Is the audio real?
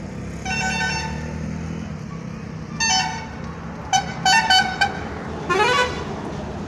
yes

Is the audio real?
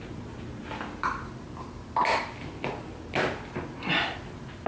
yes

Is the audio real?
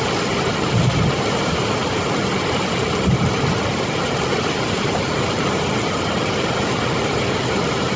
yes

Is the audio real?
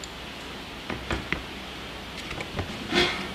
yes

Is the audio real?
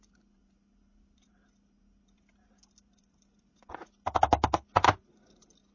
yes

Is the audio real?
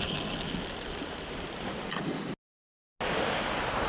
yes